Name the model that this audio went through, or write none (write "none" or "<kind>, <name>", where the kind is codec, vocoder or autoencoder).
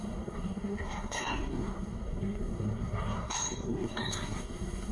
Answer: codec, SNAC